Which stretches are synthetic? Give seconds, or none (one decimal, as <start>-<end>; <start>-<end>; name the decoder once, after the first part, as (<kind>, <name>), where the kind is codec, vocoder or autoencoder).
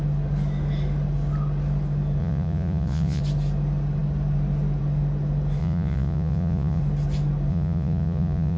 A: 2.2-3.2 (vocoder, Vocos); 5.6-6.8; 7.5-8.6